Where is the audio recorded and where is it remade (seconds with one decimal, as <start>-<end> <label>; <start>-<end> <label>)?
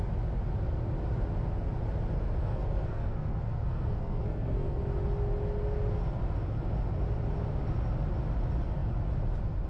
0.0-2.4 recorded; 2.4-4.8 remade; 4.8-9.7 recorded